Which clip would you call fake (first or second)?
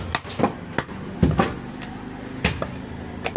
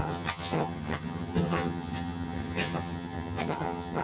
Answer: second